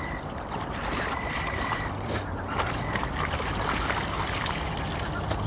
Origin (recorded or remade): remade